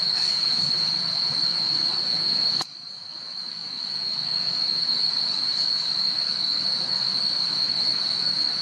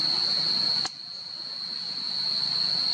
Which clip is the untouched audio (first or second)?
second